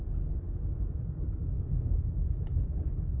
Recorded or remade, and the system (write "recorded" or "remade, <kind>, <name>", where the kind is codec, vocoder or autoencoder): recorded